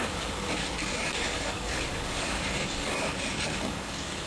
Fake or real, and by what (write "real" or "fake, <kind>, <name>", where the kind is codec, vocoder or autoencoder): fake, codec, DAC